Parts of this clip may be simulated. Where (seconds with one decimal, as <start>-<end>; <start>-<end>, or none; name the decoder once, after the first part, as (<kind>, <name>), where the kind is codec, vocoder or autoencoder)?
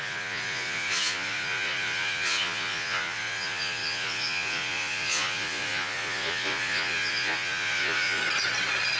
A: 0.0-8.2 (vocoder, Vocos)